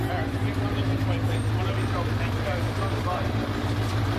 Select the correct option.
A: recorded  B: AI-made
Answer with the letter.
A